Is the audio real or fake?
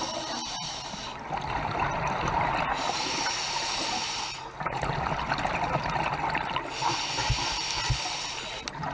real